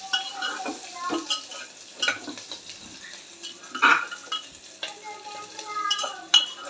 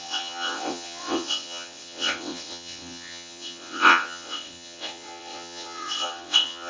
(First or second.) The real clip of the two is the first